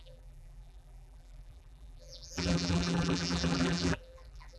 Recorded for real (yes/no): no